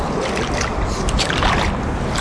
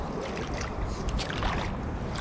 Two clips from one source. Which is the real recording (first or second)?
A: first